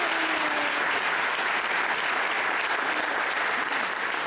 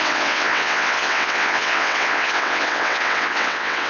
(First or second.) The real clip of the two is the first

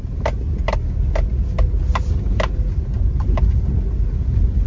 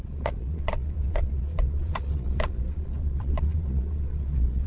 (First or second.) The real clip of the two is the first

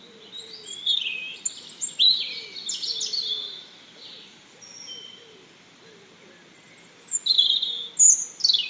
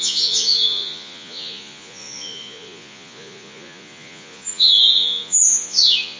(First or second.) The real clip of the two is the first